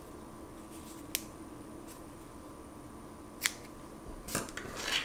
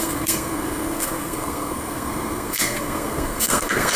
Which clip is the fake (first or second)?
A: second